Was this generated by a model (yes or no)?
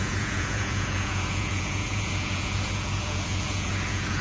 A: yes